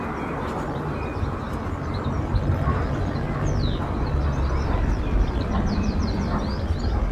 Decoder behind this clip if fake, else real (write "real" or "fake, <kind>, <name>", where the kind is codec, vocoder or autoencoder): real